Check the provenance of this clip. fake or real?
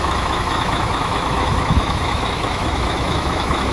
fake